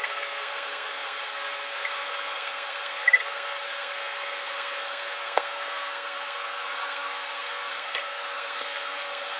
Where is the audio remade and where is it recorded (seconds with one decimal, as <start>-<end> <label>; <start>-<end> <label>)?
0.0-9.4 remade